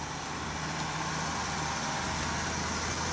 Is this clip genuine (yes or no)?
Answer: yes